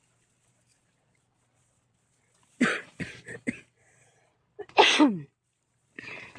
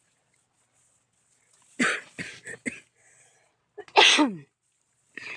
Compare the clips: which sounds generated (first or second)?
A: first